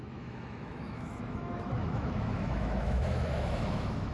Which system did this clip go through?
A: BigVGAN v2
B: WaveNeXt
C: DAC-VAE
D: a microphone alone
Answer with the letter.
C